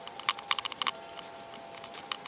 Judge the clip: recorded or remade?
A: recorded